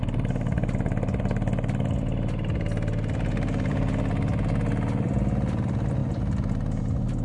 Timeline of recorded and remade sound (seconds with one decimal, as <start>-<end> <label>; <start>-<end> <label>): 0.0-7.2 recorded